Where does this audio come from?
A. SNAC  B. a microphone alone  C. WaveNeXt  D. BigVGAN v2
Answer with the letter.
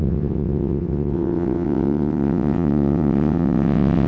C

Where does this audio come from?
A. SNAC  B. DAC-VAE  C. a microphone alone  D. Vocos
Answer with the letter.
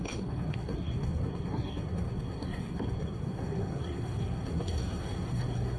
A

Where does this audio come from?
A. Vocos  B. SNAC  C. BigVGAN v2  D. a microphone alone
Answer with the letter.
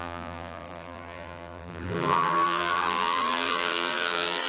C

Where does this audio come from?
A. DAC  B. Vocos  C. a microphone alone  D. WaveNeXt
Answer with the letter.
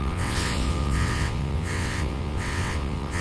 D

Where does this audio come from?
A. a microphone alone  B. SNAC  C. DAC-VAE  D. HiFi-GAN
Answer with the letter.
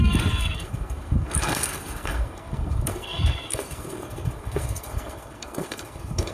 B